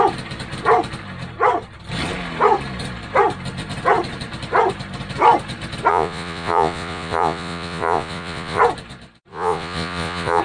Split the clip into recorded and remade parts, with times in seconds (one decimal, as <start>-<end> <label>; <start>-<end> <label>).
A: 0.0-5.9 recorded; 5.9-8.6 remade; 8.6-9.3 recorded; 9.3-10.4 remade